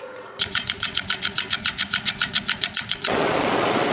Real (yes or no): no